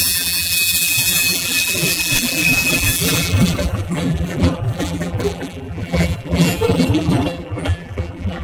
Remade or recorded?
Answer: remade